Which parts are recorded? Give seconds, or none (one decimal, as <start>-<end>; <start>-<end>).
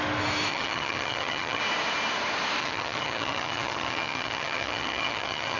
0.0-0.5; 1.6-2.6